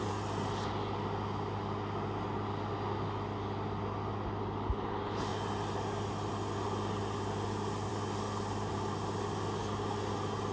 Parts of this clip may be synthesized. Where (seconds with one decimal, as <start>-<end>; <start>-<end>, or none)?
none